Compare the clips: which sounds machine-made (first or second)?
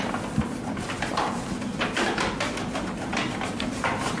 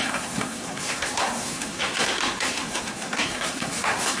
second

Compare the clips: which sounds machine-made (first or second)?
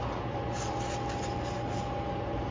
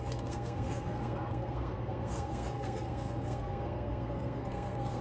second